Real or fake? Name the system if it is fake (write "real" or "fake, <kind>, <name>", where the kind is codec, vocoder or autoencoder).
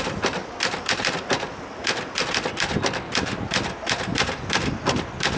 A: real